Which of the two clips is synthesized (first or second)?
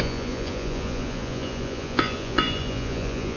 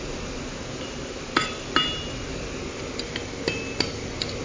first